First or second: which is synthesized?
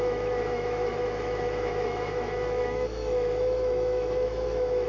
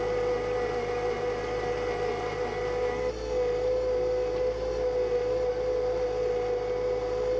first